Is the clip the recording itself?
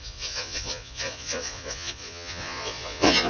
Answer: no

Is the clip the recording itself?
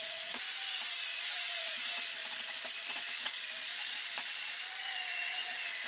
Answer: no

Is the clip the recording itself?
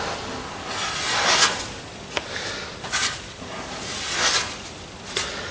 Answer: yes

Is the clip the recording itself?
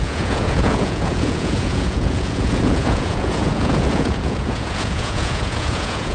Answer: no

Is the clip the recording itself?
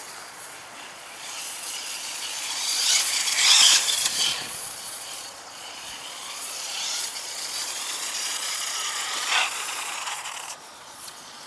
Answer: no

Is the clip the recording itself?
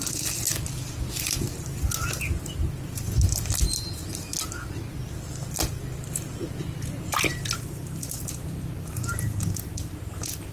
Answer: yes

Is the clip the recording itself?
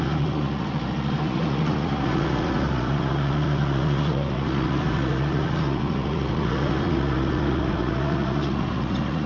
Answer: no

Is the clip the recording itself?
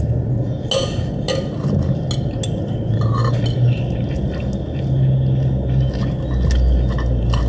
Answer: yes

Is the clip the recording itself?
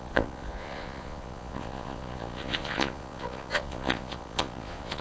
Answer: no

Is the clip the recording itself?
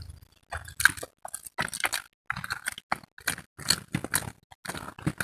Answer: yes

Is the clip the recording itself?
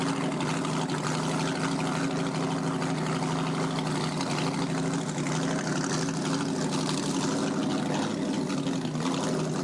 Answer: yes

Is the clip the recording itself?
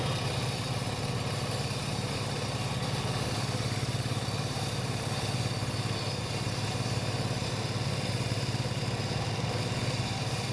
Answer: yes